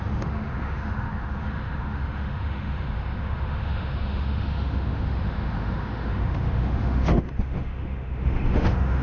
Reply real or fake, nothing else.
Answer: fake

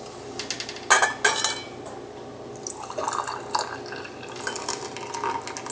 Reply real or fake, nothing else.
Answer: real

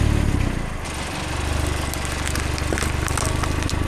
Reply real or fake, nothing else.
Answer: real